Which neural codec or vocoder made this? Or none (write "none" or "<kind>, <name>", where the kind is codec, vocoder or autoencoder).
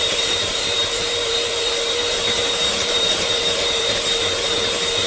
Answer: vocoder, BigVGAN v2